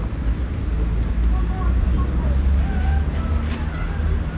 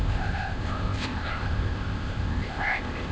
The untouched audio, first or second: first